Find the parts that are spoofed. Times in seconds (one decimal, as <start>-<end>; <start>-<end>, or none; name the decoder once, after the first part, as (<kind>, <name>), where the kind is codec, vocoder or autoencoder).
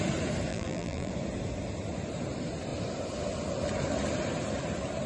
0.5-1.1 (vocoder, BigVGAN v2)